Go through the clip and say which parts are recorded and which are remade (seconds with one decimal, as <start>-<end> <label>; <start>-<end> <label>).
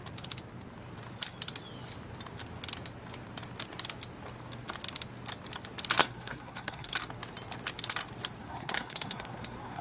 0.0-6.0 recorded; 6.0-6.9 remade; 6.9-8.4 recorded; 8.4-9.8 remade